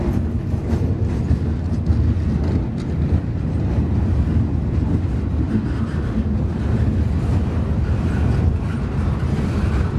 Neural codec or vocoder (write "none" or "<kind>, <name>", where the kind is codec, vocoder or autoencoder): none